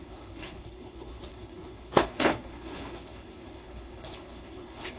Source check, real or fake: fake